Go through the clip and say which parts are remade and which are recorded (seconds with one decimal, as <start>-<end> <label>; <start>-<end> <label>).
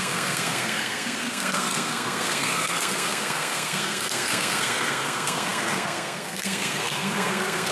0.0-7.7 remade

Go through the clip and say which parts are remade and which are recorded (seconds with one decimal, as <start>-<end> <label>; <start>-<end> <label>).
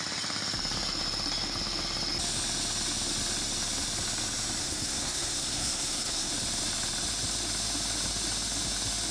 0.0-4.6 recorded; 4.6-6.3 remade; 6.3-9.1 recorded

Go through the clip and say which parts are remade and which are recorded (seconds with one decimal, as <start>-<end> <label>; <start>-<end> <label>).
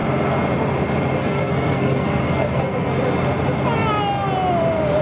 0.0-1.2 recorded; 1.2-3.0 remade; 3.0-5.0 recorded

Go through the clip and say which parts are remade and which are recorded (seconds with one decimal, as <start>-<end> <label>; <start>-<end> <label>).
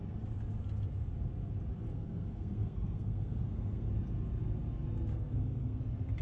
0.0-1.9 recorded; 1.9-3.9 remade; 3.9-5.1 recorded; 5.1-5.8 remade; 5.8-6.2 recorded